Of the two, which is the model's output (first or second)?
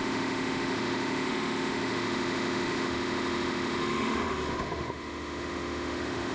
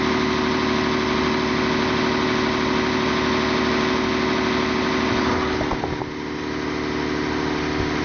first